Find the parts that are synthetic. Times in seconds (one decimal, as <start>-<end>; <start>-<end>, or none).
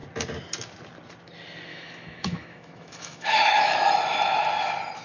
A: 1.7-3.9